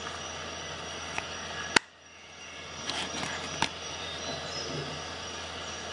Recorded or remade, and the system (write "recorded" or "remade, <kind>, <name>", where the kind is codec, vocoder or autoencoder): recorded